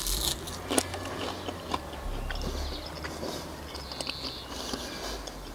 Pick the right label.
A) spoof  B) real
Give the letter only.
B